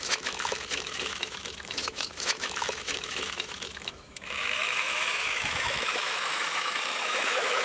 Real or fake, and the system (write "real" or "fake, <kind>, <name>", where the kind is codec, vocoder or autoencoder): fake, autoencoder, DAC-VAE